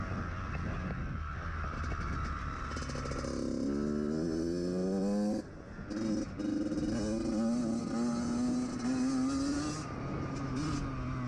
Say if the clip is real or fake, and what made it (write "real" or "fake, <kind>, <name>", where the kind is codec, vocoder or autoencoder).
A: real